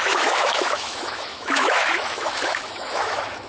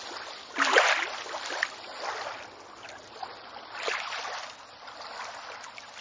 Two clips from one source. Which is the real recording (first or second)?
second